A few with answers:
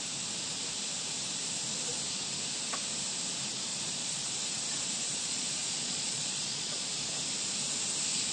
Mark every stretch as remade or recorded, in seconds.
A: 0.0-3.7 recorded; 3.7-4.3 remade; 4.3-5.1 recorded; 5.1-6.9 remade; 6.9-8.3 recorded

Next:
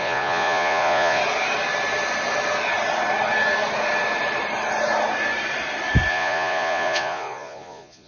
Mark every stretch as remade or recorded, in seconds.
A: 0.0-1.2 remade; 1.2-6.1 recorded; 6.1-8.1 remade

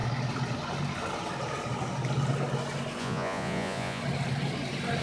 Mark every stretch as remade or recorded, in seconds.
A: 0.0-3.0 recorded; 3.0-4.0 remade; 4.0-5.0 recorded